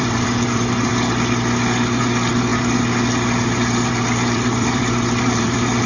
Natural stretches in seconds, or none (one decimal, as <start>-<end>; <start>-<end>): 0.9-2.0; 2.5-3.9